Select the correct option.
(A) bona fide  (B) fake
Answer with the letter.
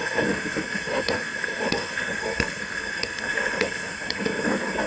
B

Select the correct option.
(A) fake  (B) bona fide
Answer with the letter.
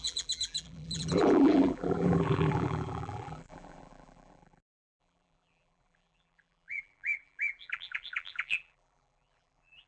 A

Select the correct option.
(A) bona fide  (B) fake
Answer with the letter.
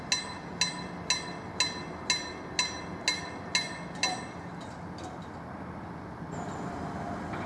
A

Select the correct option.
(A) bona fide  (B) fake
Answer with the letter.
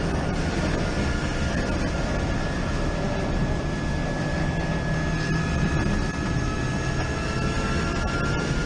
A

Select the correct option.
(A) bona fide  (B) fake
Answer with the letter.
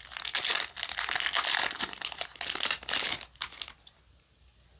A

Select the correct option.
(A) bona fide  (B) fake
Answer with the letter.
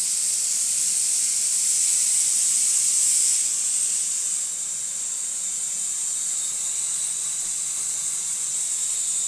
A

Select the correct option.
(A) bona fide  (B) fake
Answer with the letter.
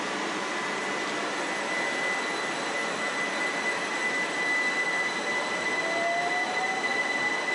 A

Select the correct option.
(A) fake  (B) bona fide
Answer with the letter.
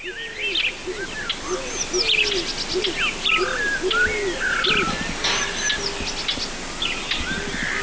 B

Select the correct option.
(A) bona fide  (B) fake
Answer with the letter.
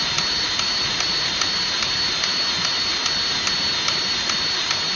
A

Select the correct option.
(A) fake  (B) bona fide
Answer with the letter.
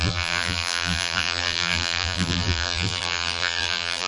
A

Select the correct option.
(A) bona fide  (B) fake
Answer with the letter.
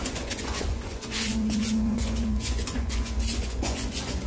B